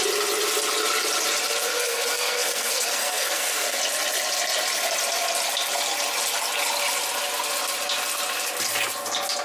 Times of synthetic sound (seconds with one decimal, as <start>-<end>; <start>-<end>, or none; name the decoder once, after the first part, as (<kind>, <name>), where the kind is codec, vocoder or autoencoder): 1.7-3.8 (codec, SNAC)